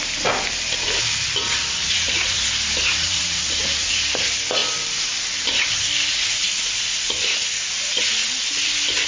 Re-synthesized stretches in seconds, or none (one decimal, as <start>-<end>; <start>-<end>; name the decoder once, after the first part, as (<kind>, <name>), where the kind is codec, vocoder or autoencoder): 1.9-2.5 (vocoder, Vocos); 2.9-4.0; 7.2-8.3